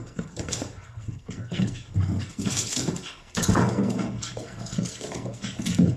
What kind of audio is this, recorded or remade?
remade